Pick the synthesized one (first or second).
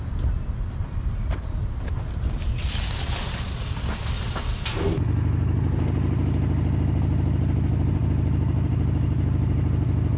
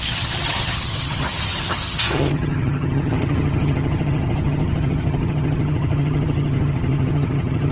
second